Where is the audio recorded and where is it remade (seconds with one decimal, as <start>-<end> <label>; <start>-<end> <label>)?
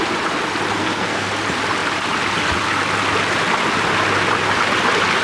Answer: 0.0-0.8 recorded; 0.8-1.3 remade; 1.3-5.2 recorded